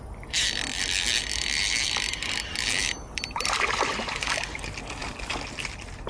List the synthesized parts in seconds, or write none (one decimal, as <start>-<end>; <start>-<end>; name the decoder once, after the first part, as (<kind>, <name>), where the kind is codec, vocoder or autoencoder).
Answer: 2.8-4.1 (vocoder, BigVGAN v2)

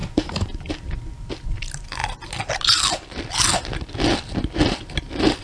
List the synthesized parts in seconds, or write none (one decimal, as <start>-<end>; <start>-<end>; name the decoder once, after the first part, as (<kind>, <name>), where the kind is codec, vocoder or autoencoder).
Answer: 0.0-0.7 (vocoder, BigVGAN v2)